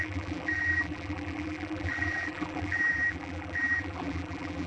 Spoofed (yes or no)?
yes